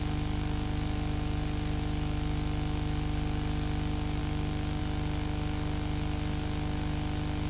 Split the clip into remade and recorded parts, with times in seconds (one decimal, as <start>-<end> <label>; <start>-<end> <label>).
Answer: 0.0-7.5 recorded